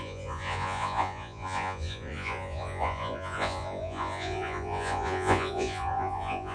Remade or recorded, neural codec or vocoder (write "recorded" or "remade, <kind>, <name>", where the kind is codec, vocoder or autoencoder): remade, vocoder, Vocos